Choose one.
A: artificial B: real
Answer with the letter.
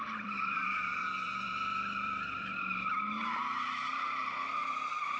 A